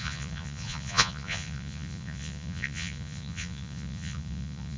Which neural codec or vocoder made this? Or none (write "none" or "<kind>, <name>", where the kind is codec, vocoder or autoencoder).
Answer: vocoder, Vocos